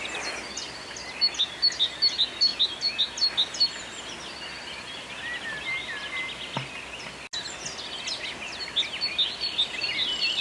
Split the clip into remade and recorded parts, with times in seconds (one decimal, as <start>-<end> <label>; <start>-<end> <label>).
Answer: 0.0-10.4 recorded